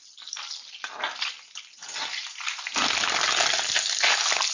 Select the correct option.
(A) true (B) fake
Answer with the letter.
A